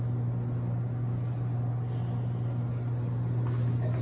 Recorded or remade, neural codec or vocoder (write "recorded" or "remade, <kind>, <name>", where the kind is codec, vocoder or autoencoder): recorded